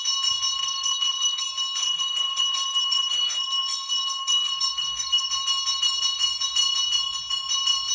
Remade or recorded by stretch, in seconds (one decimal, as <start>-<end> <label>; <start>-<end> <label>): 0.0-0.6 recorded; 0.6-1.4 remade; 1.4-1.8 recorded; 1.8-5.3 remade; 5.3-7.9 recorded